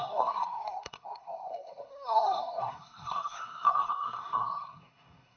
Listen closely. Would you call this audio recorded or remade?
remade